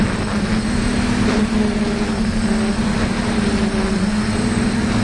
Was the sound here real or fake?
real